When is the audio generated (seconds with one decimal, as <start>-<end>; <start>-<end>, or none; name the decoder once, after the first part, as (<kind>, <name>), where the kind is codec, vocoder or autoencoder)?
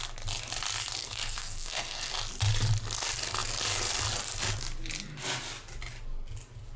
1.0-2.1 (codec, SNAC)